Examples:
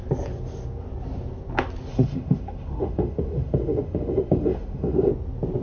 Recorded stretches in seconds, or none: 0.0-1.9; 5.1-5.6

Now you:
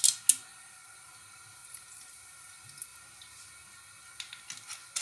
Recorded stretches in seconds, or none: 0.0-0.5; 1.0-1.6; 2.5-5.0

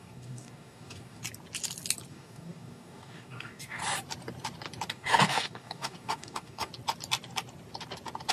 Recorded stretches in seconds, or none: 1.2-2.1; 3.8-4.9; 6.7-8.3

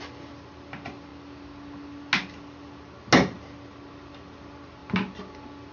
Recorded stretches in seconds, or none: 0.0-5.7

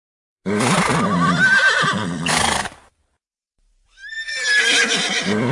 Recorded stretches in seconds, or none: 0.9-2.3; 4.0-4.6

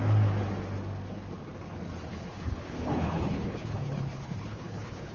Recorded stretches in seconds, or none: 0.0-2.1

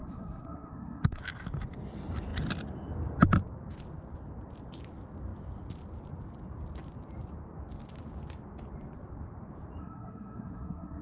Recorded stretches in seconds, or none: 1.2-9.8

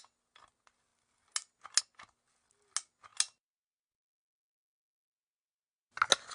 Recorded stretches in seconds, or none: 0.0-6.3